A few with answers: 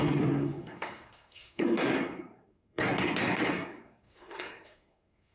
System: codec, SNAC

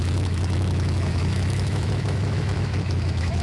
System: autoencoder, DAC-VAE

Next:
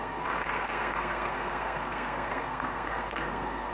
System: codec, SNAC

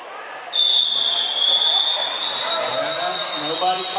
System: none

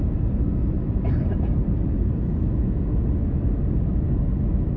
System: none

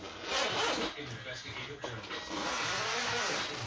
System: none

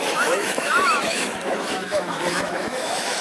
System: autoencoder, DAC-VAE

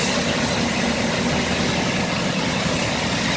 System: none